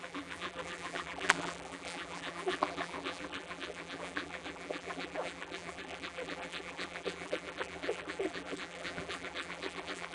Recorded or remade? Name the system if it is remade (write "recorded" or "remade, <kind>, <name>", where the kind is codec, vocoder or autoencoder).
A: remade, vocoder, BigVGAN v2